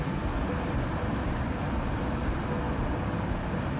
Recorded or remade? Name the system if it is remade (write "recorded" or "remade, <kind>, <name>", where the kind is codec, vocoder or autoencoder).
recorded